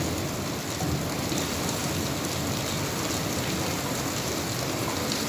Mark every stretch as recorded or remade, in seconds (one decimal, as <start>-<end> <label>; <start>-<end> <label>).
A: 0.0-5.3 recorded

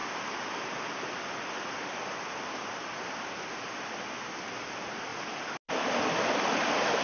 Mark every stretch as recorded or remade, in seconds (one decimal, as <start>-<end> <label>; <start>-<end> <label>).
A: 0.0-2.4 recorded; 2.4-2.8 remade; 2.8-3.4 recorded; 3.4-7.0 remade

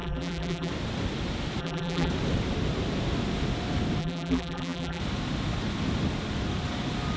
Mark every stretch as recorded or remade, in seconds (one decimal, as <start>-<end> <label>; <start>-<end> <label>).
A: 0.0-0.7 remade; 0.7-1.6 recorded; 1.6-2.1 remade; 2.1-4.0 recorded; 4.0-5.0 remade; 5.0-7.2 recorded

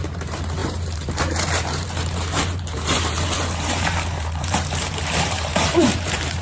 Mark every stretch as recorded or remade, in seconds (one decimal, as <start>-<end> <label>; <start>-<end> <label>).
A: 0.0-6.4 remade

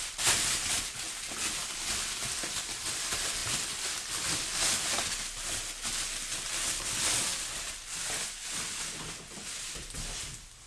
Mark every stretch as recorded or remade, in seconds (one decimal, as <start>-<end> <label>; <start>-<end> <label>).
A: 0.0-10.7 recorded

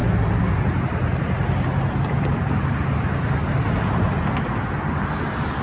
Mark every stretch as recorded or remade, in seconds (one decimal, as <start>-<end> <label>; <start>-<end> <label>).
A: 0.0-2.6 remade; 2.6-5.6 recorded